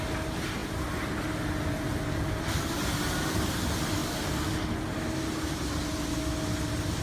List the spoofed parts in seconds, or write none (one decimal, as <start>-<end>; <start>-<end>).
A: none